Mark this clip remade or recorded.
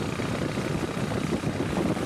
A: recorded